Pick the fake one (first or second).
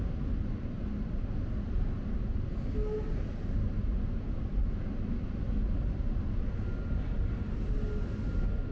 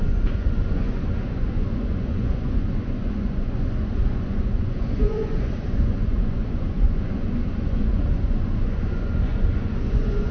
second